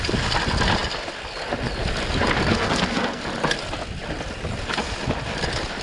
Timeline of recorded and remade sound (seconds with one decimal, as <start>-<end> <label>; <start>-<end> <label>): 0.0-2.5 recorded; 2.5-3.2 remade; 3.2-5.8 recorded

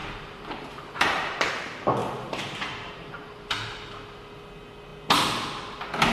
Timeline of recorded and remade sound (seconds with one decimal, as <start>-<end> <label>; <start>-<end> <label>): 0.0-1.5 remade; 1.5-2.0 recorded; 2.0-3.9 remade; 3.9-6.1 recorded

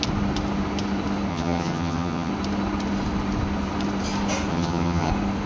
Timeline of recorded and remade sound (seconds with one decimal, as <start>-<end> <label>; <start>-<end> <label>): 0.0-1.3 recorded; 1.3-2.3 remade; 2.3-4.5 recorded; 4.5-5.1 remade; 5.1-5.5 recorded

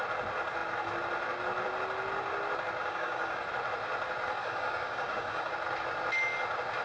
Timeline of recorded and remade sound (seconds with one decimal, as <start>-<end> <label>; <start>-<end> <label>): 0.0-2.8 recorded; 2.8-3.4 remade; 3.4-4.4 recorded; 4.4-5.5 remade; 5.5-6.8 recorded

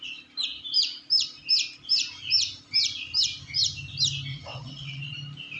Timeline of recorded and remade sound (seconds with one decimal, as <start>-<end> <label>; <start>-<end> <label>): 0.0-4.3 recorded; 4.3-5.0 remade; 5.0-5.6 recorded

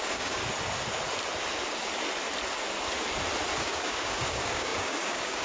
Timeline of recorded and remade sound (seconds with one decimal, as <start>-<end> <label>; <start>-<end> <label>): 0.0-0.4 remade; 0.4-3.6 recorded; 3.6-5.4 remade

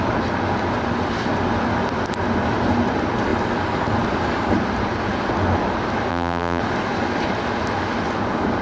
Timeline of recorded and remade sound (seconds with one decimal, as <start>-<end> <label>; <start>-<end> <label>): 0.0-6.1 recorded; 6.1-6.6 remade; 6.6-8.6 recorded